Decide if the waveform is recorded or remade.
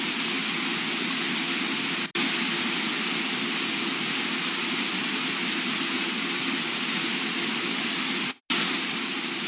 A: recorded